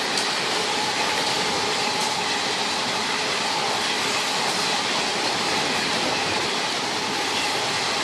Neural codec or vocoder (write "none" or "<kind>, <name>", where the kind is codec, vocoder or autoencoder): none